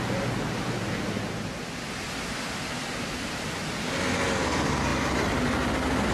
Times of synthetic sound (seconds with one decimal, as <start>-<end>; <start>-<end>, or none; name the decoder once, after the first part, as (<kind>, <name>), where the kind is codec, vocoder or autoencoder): none